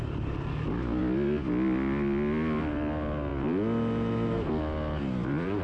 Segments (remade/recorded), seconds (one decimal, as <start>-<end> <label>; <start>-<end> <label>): 0.0-5.6 recorded